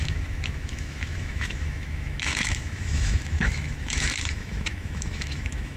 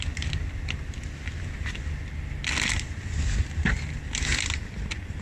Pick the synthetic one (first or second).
first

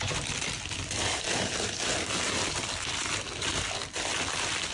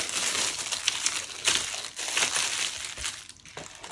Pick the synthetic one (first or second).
first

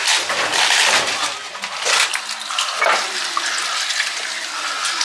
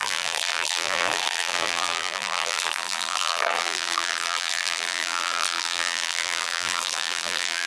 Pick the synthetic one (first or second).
second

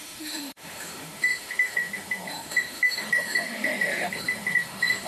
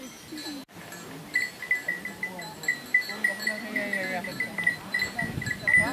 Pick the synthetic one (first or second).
first